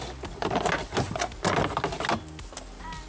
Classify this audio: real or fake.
real